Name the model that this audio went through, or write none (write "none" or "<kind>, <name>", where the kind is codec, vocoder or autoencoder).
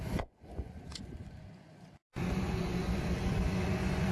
vocoder, Vocos